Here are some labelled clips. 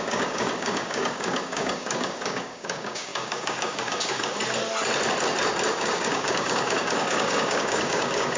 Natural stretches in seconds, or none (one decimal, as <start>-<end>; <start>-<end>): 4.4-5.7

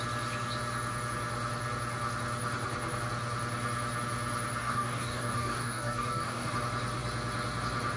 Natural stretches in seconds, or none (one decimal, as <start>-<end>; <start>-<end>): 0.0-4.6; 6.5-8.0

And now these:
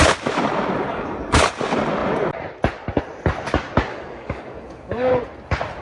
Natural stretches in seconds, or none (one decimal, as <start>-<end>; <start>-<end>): 0.0-0.9; 1.5-3.9; 5.1-5.8

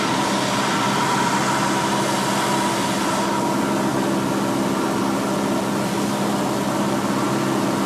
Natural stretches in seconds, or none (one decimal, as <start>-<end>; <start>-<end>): 0.0-7.9

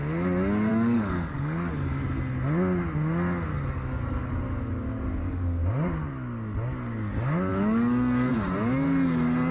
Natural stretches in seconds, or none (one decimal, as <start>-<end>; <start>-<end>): 0.0-0.7; 1.7-3.5; 4.3-7.5; 8.3-9.5